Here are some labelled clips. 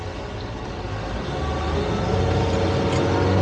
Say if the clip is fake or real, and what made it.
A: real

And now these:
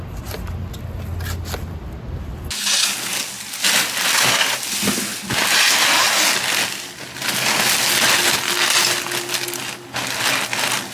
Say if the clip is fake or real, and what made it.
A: real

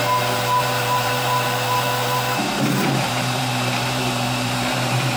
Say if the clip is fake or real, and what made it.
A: fake, vocoder, BigVGAN v2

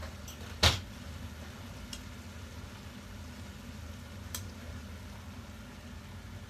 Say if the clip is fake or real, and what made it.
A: real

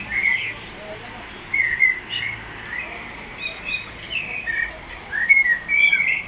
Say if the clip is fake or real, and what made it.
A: fake, vocoder, BigVGAN v2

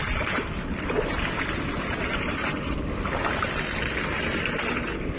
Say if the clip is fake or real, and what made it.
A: real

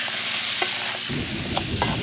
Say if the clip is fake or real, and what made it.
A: real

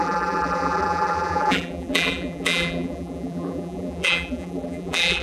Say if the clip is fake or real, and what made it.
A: fake, vocoder, BigVGAN v2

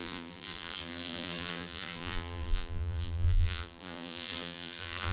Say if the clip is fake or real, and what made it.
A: fake, vocoder, BigVGAN v2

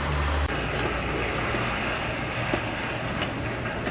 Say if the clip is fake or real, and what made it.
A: real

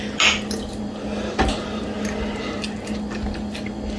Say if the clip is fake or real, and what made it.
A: real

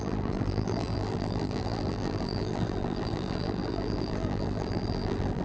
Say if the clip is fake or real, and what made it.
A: fake, vocoder, BigVGAN v2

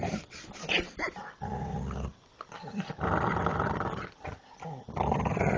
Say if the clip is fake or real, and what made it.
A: real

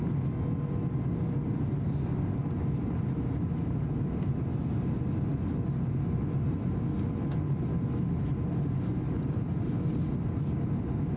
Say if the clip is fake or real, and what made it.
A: real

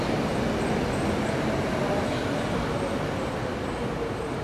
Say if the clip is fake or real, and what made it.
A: real